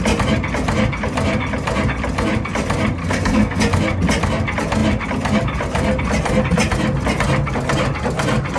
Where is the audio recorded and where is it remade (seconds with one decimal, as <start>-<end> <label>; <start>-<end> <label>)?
0.0-3.0 recorded; 3.0-3.6 remade; 3.6-8.6 recorded